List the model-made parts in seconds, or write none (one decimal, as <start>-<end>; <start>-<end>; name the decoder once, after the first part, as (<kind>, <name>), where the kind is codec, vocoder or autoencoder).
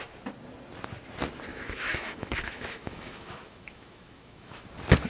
1.5-4.6 (autoencoder, DAC-VAE)